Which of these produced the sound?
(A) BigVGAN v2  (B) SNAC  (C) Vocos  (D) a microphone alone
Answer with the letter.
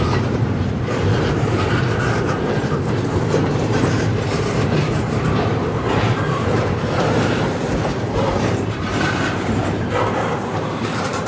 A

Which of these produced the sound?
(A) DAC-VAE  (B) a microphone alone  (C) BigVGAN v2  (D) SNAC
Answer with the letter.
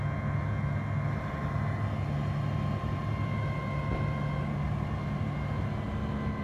B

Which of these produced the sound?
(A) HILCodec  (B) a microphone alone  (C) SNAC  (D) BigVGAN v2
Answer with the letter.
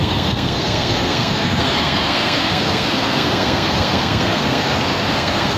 C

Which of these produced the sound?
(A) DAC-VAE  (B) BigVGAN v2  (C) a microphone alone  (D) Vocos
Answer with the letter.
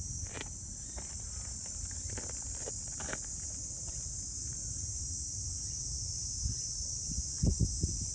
B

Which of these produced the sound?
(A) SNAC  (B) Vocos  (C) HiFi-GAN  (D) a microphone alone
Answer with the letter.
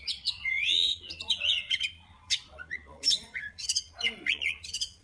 B